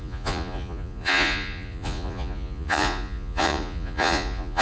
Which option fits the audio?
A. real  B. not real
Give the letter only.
B